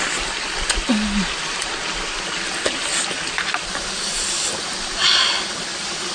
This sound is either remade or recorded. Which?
recorded